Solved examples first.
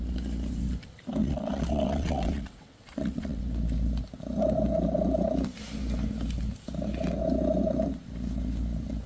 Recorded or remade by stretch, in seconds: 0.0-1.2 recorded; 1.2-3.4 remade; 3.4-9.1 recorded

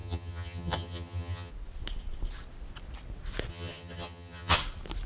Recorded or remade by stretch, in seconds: 0.0-1.5 remade; 1.5-3.5 recorded; 3.5-4.6 remade; 4.6-5.1 recorded

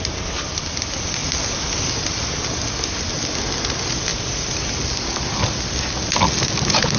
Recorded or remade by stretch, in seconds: 0.0-7.0 recorded

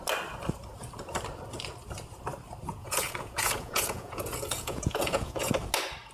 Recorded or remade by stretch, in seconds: 0.0-2.8 recorded; 2.8-5.5 remade; 5.5-6.1 recorded

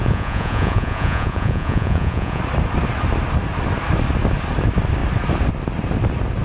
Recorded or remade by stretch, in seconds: 0.0-2.4 remade; 2.4-6.4 recorded

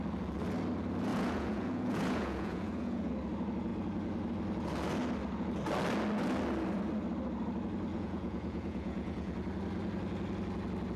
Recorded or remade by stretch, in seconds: 0.0-1.1 recorded; 1.1-3.1 remade; 3.1-7.9 recorded; 7.9-9.3 remade; 9.3-11.0 recorded

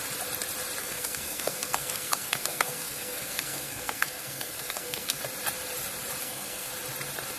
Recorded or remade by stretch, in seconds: 0.0-0.8 recorded; 0.8-5.2 remade; 5.2-6.2 recorded; 6.2-6.7 remade; 6.7-7.4 recorded

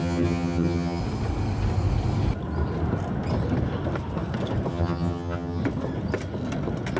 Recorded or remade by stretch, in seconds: 0.0-1.0 remade; 1.0-4.7 recorded; 4.7-5.6 remade; 5.6-7.0 recorded